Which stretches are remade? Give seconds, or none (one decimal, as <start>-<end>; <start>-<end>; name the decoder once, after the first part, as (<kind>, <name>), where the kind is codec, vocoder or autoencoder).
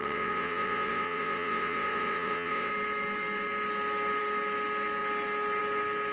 0.0-2.7 (vocoder, WaveNeXt)